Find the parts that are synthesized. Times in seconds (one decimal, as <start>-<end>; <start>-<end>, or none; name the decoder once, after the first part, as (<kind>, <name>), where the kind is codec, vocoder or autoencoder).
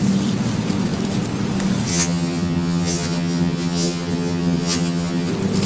1.9-5.3 (vocoder, HiFi-GAN)